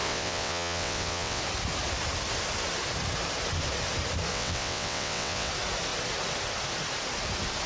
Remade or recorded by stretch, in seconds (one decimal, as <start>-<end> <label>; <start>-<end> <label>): 0.0-1.4 remade; 1.4-4.3 recorded; 4.3-5.5 remade; 5.5-7.7 recorded